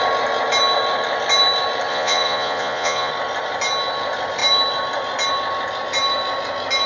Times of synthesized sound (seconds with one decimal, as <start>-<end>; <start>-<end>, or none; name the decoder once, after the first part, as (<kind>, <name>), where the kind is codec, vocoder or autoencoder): 1.9-3.1 (vocoder, Vocos)